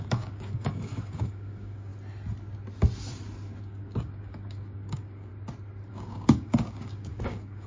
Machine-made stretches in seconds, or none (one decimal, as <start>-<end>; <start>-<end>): 0.0-1.9; 3.6-5.3; 5.9-7.7